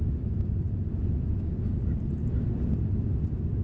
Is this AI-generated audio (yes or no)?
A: no